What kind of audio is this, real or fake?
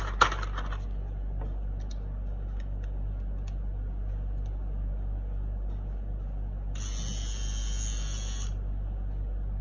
real